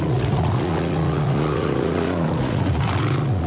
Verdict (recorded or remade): remade